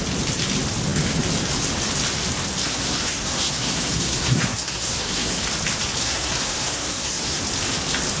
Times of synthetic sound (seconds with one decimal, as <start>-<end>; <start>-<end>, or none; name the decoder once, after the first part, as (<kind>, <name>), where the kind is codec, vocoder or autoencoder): 2.6-5.4 (codec, SNAC); 6.0-7.4